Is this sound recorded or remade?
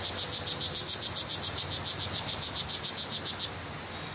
recorded